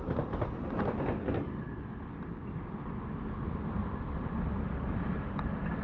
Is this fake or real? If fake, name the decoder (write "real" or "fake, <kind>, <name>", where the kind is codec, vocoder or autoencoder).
real